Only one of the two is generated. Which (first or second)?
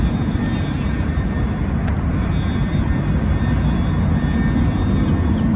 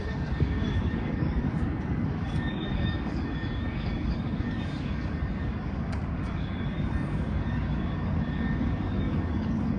second